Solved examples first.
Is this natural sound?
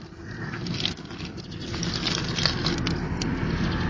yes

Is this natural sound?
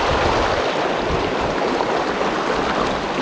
yes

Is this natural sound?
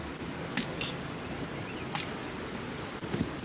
yes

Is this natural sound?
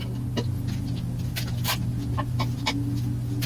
yes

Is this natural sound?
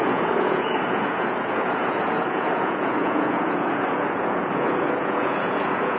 no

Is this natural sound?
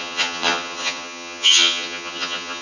no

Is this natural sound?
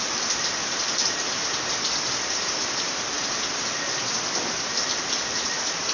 yes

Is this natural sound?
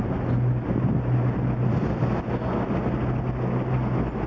yes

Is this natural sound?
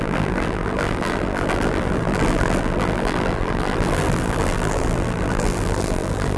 no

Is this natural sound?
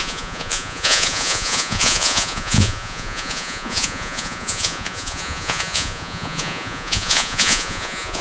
no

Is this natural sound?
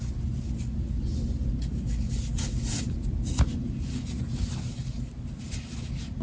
yes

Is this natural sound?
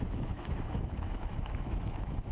no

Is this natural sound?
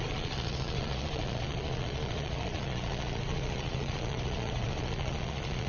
no